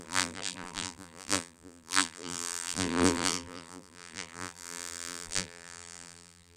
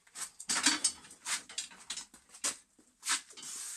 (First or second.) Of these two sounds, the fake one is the first